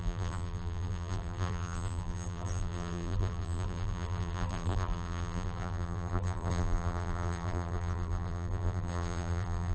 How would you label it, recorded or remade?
remade